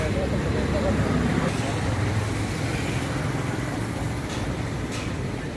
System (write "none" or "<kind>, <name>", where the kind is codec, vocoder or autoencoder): vocoder, BigVGAN v2